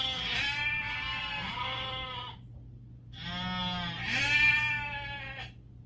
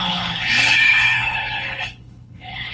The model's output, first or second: second